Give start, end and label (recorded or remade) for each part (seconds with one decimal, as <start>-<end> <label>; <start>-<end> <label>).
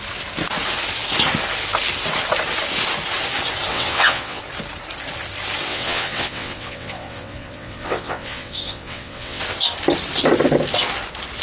0.0-3.7 recorded; 3.7-4.4 remade; 4.4-5.7 recorded; 5.7-9.4 remade; 9.4-11.4 recorded